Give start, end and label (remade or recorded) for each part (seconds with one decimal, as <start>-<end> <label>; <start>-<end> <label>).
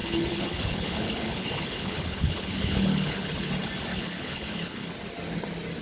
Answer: 0.0-3.5 remade; 3.5-3.9 recorded; 3.9-4.9 remade; 4.9-5.8 recorded